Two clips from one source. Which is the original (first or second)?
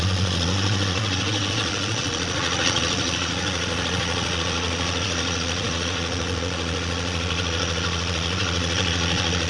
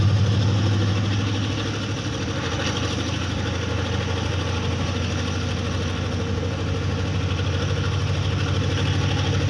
second